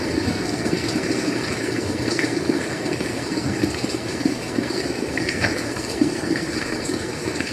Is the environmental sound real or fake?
fake